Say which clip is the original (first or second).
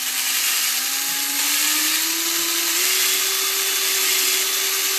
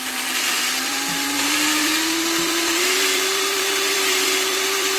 first